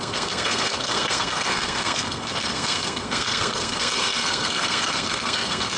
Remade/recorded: remade